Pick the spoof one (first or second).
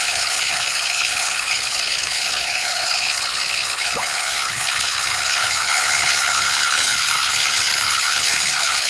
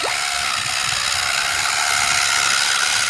first